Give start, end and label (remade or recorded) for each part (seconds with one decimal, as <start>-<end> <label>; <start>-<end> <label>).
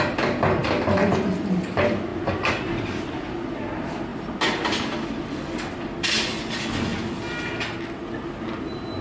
0.0-9.0 recorded